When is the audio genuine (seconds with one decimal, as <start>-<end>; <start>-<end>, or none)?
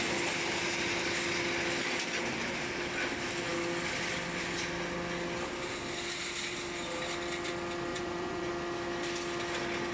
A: 0.0-7.9; 8.5-9.9